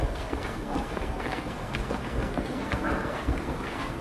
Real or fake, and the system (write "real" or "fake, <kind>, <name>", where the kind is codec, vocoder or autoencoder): fake, codec, SNAC